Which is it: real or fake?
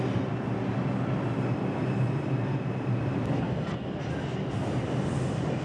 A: real